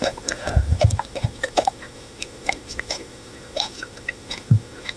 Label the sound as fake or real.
fake